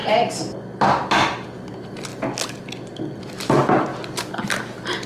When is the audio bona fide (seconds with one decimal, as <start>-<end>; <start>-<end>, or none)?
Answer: 0.0-1.7; 2.1-3.3; 3.9-5.1